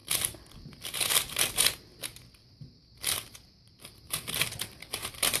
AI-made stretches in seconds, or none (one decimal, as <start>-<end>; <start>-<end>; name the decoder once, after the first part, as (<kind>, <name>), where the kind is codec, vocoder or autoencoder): 1.5-1.9 (vocoder, BigVGAN v2); 3.2-5.4